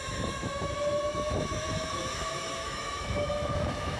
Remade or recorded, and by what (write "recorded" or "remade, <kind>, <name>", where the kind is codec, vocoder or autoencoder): remade, autoencoder, DAC-VAE